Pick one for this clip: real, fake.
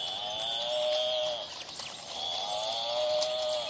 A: real